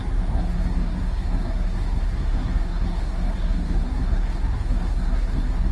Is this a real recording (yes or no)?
no